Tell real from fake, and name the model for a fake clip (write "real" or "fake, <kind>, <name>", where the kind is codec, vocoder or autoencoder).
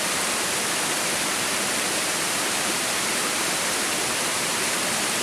fake, vocoder, BigVGAN v2